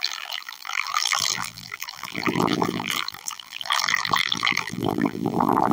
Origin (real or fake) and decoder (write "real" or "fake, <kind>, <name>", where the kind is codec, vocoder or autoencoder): fake, vocoder, BigVGAN v2